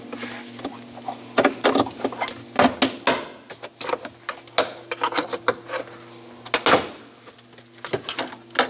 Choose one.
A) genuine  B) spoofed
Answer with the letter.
A